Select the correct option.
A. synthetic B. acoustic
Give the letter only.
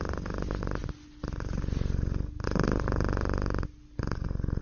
B